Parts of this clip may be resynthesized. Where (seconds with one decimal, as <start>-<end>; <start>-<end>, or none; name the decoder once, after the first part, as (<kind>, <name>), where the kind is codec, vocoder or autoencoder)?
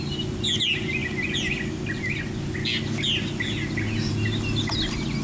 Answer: none